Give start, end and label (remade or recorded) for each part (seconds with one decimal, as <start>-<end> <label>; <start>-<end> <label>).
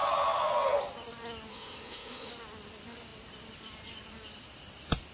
0.0-1.5 recorded; 1.5-2.3 remade; 2.3-5.1 recorded